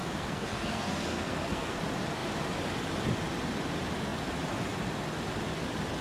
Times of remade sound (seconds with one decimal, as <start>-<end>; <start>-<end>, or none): 0.0-1.8